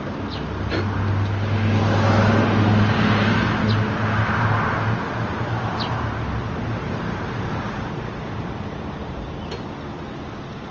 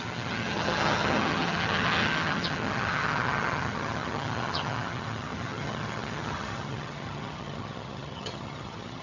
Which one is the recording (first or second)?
first